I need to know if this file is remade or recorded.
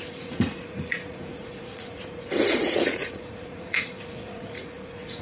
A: remade